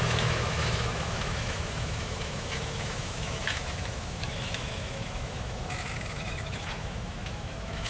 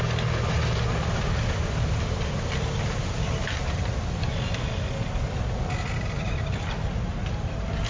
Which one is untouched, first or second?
second